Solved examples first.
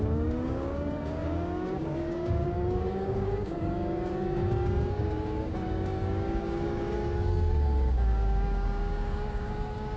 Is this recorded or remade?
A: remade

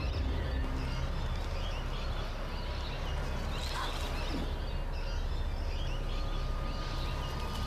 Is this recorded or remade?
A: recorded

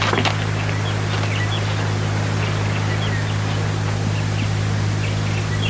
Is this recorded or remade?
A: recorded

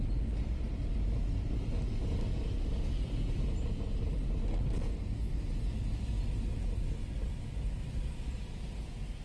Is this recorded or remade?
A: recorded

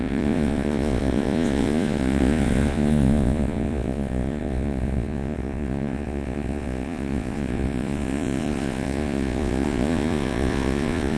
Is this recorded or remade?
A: remade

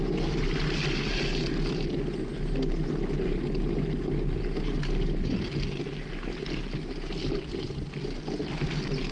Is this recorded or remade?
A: recorded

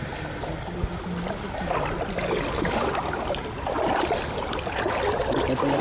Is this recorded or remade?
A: recorded